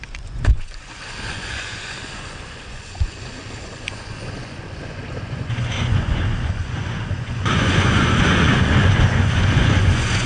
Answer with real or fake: fake